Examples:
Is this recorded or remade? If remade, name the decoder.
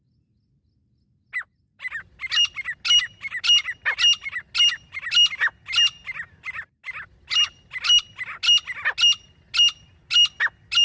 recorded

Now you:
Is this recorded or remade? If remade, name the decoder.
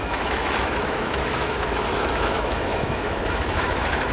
remade, autoencoder, DAC-VAE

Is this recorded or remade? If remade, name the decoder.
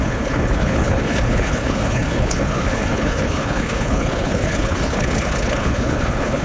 remade, codec, HILCodec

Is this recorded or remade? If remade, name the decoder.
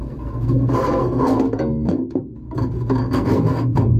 remade, codec, SNAC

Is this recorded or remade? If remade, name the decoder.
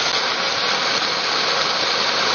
recorded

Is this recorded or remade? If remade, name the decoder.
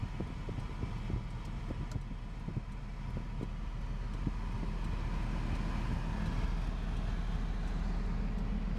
recorded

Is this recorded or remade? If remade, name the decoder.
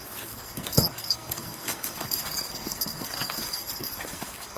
remade, codec, SNAC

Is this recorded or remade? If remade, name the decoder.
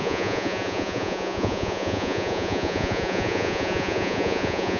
remade, vocoder, Vocos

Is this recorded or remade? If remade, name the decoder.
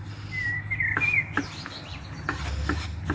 recorded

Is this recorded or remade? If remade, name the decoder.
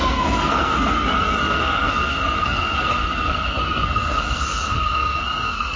remade, codec, SNAC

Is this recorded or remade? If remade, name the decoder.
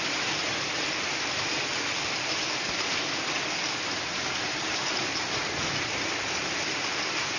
recorded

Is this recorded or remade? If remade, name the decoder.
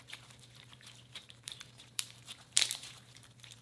remade, vocoder, BigVGAN v2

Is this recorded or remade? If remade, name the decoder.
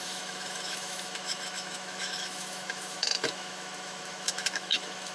remade, autoencoder, DAC-VAE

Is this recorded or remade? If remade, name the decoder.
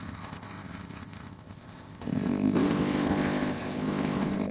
remade, codec, ZipCodec